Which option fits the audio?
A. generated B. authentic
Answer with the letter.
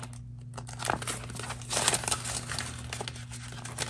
B